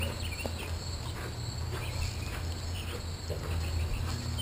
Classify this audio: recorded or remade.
recorded